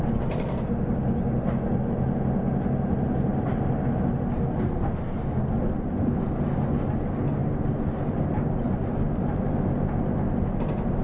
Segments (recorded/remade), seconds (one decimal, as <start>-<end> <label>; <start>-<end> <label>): 0.0-3.3 recorded; 3.3-3.8 remade; 3.8-11.0 recorded